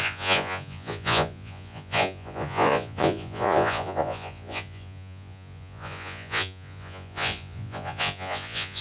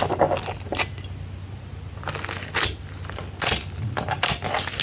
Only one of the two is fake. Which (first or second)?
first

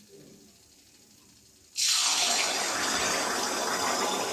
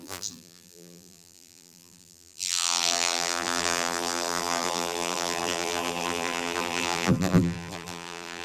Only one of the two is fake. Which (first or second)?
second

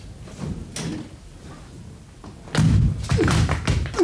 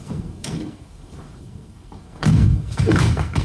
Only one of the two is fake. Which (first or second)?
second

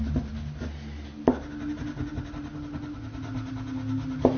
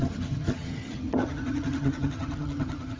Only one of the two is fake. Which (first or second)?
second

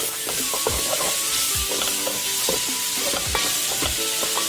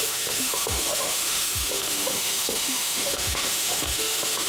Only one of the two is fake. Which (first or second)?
second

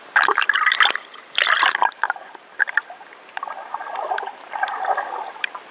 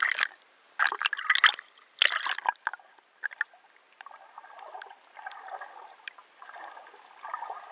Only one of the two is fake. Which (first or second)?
first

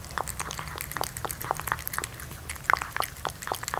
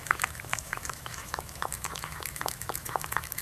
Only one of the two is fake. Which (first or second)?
second